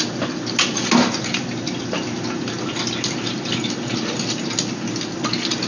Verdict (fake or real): real